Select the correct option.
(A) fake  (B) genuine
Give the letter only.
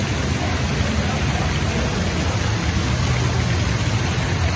B